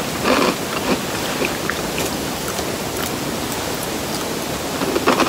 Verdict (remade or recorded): recorded